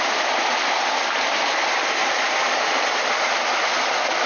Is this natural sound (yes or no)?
yes